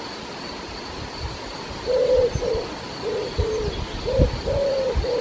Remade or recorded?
recorded